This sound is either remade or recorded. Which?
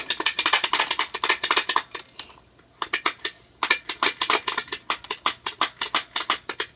recorded